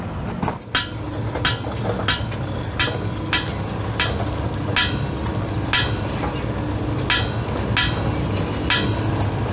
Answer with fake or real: real